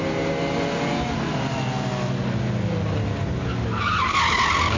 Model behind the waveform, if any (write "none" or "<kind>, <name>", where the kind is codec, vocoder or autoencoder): none